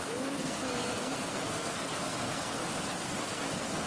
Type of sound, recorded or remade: remade